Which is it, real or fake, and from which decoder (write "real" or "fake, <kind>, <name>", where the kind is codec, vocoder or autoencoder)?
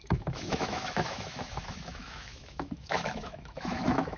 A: fake, autoencoder, DAC-VAE